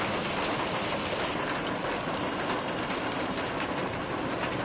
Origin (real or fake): real